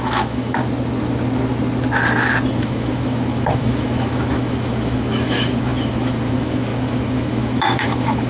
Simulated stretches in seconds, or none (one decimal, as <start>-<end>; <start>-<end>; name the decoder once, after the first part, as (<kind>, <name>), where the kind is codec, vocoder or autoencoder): 0.0-0.6 (autoencoder, DAC-VAE); 2.6-8.3